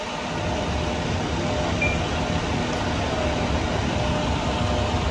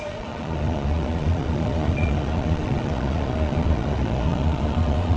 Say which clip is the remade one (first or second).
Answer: second